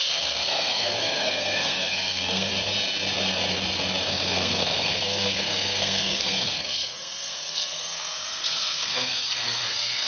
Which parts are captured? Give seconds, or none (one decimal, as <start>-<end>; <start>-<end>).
2.5-4.1